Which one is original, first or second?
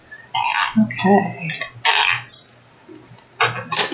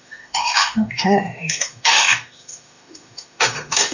first